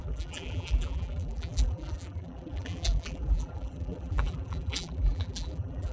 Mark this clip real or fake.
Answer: fake